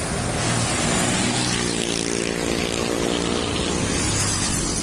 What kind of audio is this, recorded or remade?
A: recorded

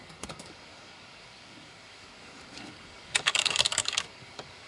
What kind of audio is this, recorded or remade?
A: remade